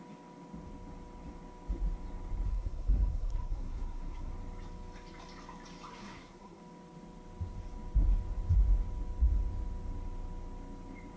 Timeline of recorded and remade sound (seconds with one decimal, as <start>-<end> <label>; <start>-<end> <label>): 0.0-2.5 recorded; 2.5-4.3 remade; 4.3-5.9 recorded; 5.9-6.6 remade; 6.6-11.2 recorded